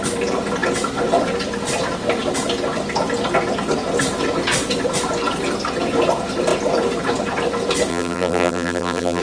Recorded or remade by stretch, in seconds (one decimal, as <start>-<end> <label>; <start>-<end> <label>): 0.0-7.9 recorded; 7.9-9.2 remade